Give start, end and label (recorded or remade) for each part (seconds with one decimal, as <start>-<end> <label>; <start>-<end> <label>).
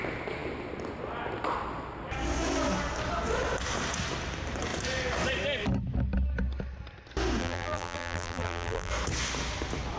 0.0-7.4 recorded; 7.4-8.9 remade; 8.9-10.0 recorded